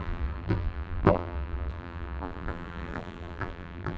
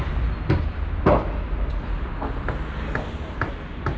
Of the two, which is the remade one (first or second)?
first